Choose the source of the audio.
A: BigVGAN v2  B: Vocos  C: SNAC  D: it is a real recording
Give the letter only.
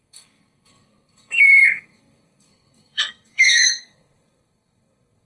C